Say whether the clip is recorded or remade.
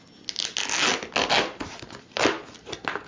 recorded